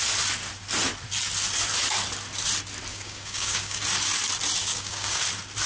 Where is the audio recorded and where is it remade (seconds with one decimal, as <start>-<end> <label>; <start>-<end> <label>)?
0.0-2.9 recorded; 2.9-3.8 remade; 3.8-4.6 recorded; 4.6-5.2 remade; 5.2-5.7 recorded